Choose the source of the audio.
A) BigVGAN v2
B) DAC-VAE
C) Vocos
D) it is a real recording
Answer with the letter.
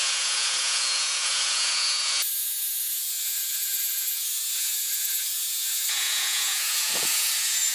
C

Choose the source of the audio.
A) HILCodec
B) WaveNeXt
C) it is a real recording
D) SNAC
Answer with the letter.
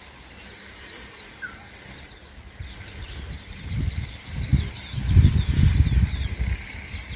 C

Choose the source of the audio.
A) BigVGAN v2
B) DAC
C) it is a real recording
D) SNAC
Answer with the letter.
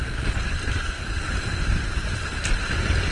C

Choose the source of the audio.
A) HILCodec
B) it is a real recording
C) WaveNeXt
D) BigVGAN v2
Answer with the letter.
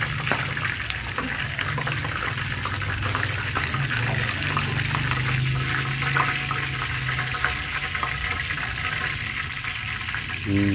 B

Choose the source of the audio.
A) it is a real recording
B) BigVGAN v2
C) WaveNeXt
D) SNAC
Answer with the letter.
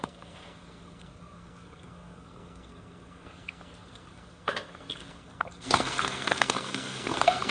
D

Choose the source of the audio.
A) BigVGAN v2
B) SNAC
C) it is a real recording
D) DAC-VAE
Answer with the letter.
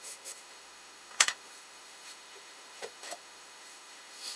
D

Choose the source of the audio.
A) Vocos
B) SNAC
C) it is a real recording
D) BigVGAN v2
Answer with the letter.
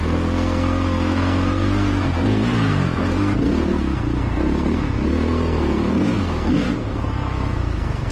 B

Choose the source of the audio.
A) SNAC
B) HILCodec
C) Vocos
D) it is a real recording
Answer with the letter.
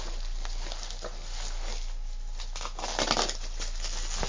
D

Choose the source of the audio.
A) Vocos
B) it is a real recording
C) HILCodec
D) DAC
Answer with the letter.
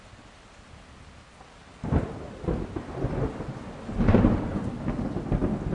B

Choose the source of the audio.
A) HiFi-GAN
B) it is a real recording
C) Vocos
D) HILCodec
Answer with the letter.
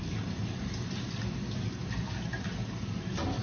B